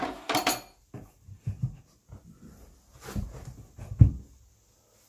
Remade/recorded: recorded